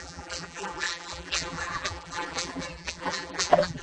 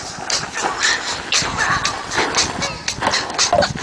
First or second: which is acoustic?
second